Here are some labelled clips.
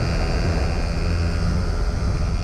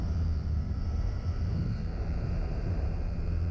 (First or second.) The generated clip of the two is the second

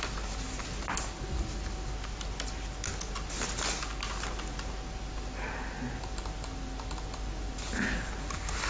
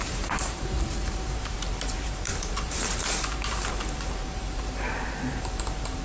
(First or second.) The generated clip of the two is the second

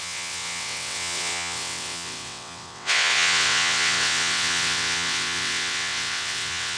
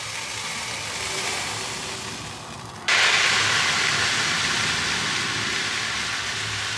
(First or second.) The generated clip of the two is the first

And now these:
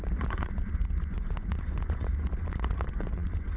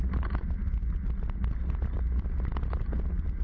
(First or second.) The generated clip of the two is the first